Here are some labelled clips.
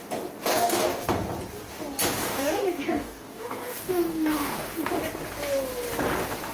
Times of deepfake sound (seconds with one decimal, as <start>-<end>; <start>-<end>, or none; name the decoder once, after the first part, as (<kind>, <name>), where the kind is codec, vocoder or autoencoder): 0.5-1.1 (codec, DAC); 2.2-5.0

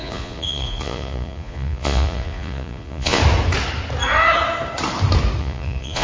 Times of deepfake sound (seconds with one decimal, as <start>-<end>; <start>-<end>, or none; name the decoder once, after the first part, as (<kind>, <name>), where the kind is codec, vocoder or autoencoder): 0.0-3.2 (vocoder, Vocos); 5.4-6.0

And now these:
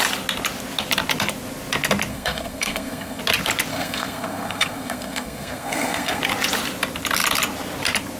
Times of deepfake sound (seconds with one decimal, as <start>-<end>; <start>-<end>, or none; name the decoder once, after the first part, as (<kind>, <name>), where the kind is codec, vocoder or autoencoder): 2.1-3.2 (codec, SNAC); 3.7-6.2

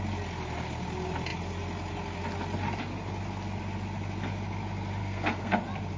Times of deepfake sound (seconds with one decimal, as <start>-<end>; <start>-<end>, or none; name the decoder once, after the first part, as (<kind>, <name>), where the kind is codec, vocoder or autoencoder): 5.0-5.6 (codec, SNAC)